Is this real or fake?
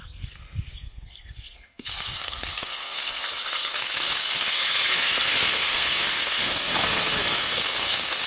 fake